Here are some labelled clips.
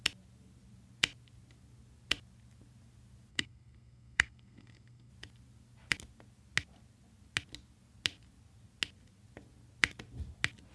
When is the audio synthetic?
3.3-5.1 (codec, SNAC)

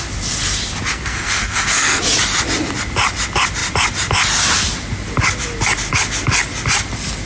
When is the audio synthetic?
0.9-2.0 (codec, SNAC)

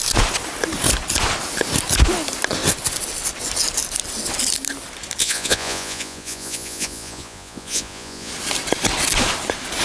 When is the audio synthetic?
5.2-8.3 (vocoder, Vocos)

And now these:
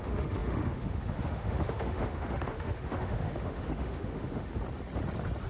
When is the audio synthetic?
0.0-4.5 (autoencoder, DAC-VAE)

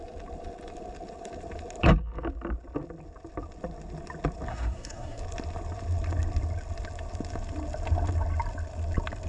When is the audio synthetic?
4.5-5.2 (codec, SNAC)

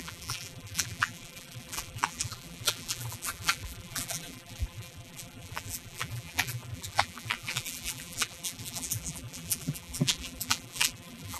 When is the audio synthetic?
0.0-11.4 (vocoder, BigVGAN v2)

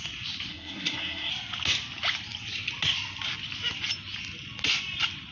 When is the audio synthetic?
0.5-1.3 (codec, SNAC)